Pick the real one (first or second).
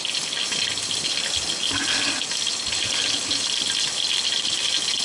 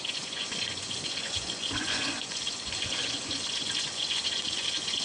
first